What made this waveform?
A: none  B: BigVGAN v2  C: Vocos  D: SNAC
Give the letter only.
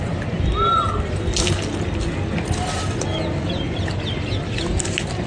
A